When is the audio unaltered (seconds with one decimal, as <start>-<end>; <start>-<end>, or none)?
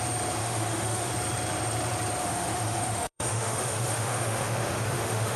0.0-0.4; 1.1-2.2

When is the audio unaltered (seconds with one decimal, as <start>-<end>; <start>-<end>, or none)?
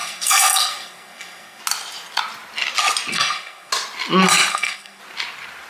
1.6-3.1; 3.7-4.5; 5.0-5.7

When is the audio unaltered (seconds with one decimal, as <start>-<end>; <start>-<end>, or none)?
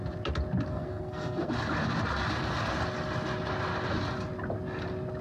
0.0-0.7; 1.5-5.2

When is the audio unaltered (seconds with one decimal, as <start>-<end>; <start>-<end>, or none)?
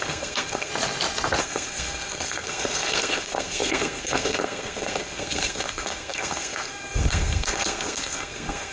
0.7-1.4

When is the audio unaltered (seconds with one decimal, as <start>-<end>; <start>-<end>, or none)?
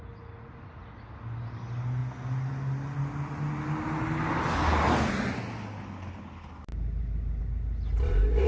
0.0-8.5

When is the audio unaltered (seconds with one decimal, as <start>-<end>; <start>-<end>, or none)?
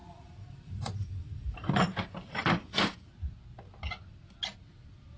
3.1-5.2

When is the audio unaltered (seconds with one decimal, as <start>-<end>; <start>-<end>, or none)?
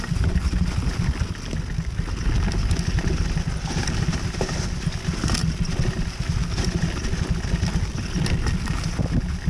0.0-9.5